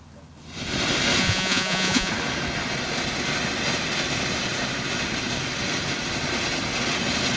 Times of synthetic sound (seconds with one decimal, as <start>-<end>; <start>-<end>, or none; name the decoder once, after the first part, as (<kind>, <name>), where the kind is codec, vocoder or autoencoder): 1.2-2.1 (vocoder, Vocos)